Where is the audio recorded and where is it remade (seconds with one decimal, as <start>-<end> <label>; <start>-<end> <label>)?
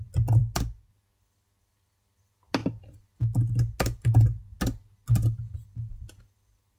0.0-6.8 recorded